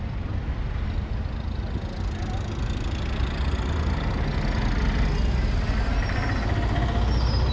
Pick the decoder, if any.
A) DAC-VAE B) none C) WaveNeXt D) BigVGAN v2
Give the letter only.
B